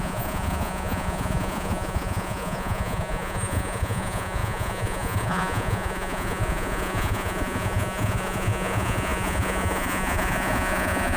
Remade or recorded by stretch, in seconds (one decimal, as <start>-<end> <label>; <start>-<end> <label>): 0.0-11.2 remade

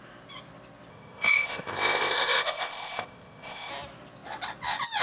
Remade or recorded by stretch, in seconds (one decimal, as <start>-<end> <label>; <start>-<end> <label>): 0.0-0.9 recorded; 0.9-3.7 remade; 3.7-5.0 recorded

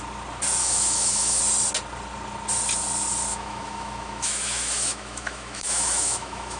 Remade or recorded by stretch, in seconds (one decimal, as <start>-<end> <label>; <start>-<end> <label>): 0.0-0.6 recorded; 0.6-1.4 remade; 1.4-3.3 recorded; 3.3-6.6 remade